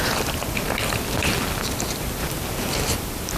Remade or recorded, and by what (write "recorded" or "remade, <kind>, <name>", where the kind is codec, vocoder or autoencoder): recorded